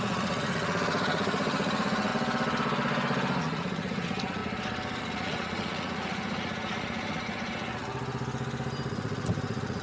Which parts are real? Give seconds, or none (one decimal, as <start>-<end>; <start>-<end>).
2.1-3.4; 4.4-5.0; 7.9-8.9